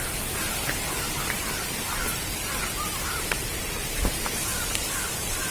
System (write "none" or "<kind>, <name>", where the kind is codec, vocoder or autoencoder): vocoder, BigVGAN v2